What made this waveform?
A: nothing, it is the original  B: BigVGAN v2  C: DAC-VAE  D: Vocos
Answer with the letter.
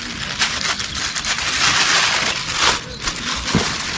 A